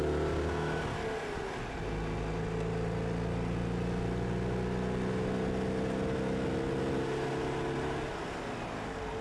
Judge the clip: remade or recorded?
recorded